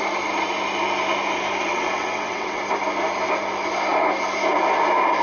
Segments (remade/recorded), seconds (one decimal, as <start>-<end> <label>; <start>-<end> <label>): 0.0-1.7 recorded; 1.7-2.6 remade; 2.6-5.2 recorded